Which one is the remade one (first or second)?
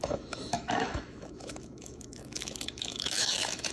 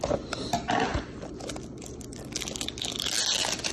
first